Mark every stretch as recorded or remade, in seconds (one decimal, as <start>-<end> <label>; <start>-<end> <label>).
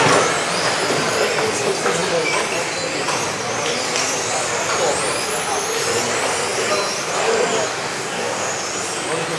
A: 0.0-7.7 recorded; 7.7-8.5 remade; 8.5-9.4 recorded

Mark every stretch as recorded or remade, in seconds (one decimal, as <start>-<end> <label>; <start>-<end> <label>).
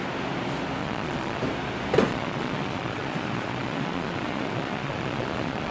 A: 0.0-0.8 recorded; 0.8-1.4 remade; 1.4-2.1 recorded; 2.1-5.7 remade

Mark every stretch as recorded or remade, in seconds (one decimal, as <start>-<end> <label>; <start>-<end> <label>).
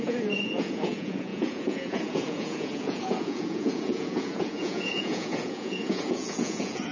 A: 0.0-6.9 remade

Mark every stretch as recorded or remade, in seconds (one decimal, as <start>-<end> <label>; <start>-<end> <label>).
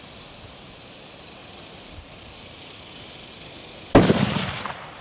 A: 0.0-1.4 recorded; 1.4-4.4 remade; 4.4-5.0 recorded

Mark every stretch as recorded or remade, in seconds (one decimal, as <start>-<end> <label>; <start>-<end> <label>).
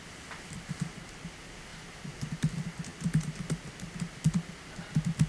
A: 0.0-1.7 recorded; 1.7-2.3 remade; 2.3-5.3 recorded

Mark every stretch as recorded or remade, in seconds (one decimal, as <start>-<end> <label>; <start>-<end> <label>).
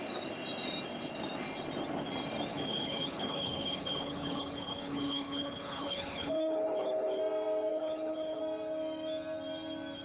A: 0.0-2.5 recorded; 2.5-7.2 remade; 7.2-7.7 recorded; 7.7-8.4 remade; 8.4-10.0 recorded